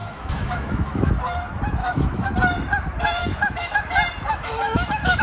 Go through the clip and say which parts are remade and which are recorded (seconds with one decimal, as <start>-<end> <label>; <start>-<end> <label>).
0.0-1.1 remade; 1.1-1.8 recorded; 1.8-2.3 remade; 2.3-3.2 recorded; 3.2-3.8 remade; 3.8-4.3 recorded; 4.3-5.2 remade